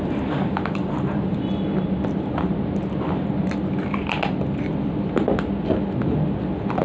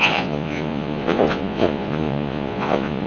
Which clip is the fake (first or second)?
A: second